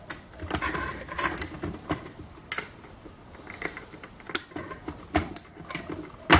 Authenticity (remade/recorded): recorded